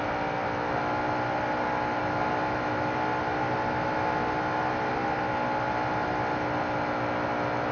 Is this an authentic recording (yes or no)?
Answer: yes